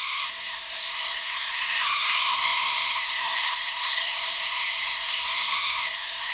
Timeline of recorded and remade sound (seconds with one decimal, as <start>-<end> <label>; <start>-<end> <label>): 0.0-6.3 remade